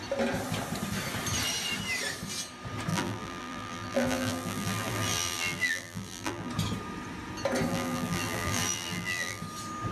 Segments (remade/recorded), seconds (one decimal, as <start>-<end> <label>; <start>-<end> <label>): 0.0-2.9 recorded; 2.9-6.5 remade; 6.5-7.7 recorded; 7.7-9.4 remade; 9.4-9.9 recorded